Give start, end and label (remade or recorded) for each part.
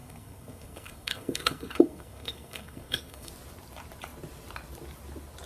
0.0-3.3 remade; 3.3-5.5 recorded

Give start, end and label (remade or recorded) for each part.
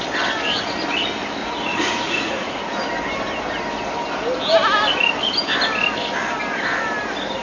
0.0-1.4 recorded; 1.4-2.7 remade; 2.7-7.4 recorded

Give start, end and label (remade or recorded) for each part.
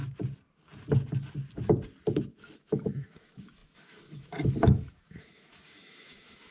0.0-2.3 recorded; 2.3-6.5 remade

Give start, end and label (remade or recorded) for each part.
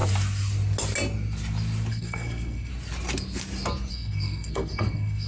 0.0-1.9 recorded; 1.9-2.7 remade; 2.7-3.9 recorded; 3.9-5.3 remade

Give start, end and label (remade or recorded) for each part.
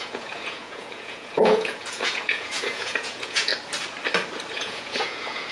0.0-3.5 remade; 3.5-4.5 recorded; 4.5-5.5 remade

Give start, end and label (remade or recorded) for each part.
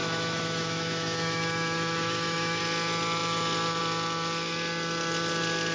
0.0-2.6 remade; 2.6-5.7 recorded